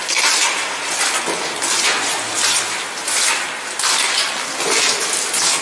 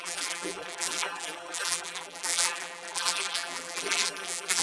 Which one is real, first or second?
first